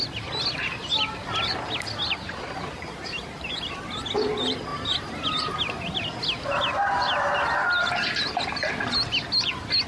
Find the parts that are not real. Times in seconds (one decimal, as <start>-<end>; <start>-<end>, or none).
none